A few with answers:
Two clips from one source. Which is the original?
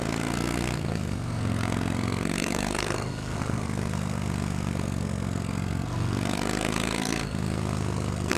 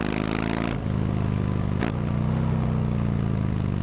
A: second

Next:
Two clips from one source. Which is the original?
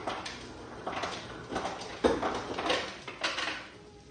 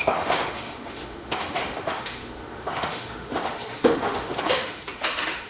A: first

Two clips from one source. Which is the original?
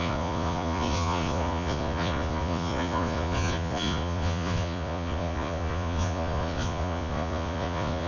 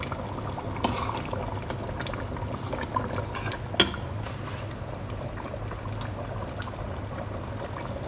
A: second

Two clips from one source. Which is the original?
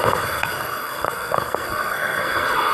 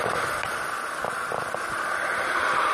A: second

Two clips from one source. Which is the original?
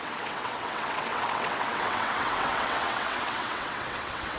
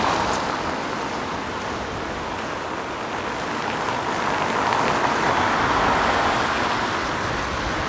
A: second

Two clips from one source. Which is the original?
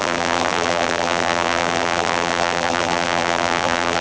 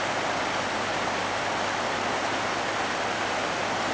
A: second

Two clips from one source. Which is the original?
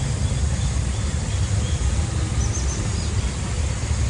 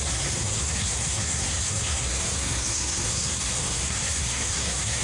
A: first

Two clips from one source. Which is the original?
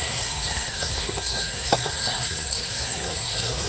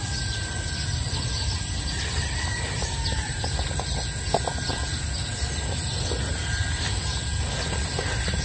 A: second